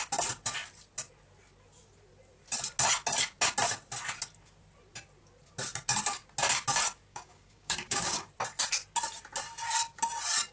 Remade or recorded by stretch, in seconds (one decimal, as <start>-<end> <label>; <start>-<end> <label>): 0.0-7.1 recorded; 7.1-8.3 remade; 8.3-10.5 recorded